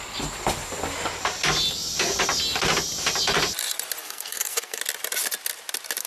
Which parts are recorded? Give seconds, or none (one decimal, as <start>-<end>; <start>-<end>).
0.0-4.0; 4.8-6.1